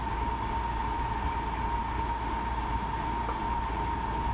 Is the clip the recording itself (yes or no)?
yes